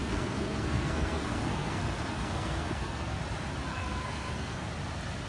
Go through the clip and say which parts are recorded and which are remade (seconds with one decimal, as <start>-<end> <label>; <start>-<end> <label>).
0.0-3.2 remade; 3.2-3.7 recorded; 3.7-4.7 remade; 4.7-5.3 recorded